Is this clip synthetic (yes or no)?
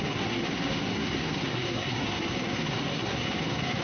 yes